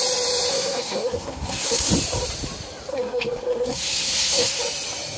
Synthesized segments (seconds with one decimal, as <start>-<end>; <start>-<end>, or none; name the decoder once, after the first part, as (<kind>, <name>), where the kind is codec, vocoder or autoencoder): 0.5-1.9 (codec, SNAC); 2.9-4.6